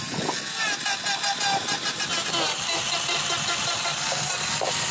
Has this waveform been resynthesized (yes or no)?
no